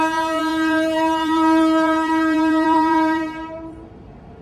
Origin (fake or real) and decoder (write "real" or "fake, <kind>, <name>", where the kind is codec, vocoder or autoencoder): fake, vocoder, BigVGAN v2